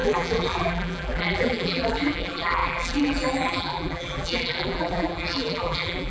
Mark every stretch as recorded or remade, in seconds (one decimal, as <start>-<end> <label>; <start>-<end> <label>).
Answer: 0.0-6.1 remade